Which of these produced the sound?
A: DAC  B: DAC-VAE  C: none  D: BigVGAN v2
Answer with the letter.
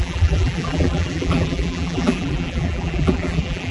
D